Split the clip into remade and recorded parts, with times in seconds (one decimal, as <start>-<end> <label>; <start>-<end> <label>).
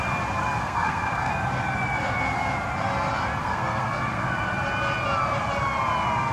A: 0.0-0.6 recorded; 0.6-1.3 remade; 1.3-3.4 recorded; 3.4-4.4 remade; 4.4-6.3 recorded